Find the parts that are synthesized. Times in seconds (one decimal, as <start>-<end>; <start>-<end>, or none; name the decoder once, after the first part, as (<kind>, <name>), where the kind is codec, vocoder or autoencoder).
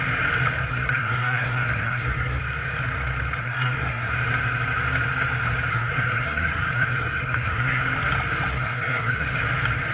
0.7-2.4 (codec, SNAC); 3.4-4.1; 5.7-7.8; 8.5-9.4